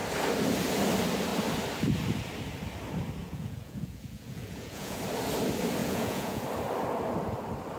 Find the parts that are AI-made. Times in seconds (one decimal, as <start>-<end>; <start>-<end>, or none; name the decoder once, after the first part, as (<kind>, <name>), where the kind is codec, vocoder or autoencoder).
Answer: 3.2-5.0 (vocoder, Vocos); 5.8-6.4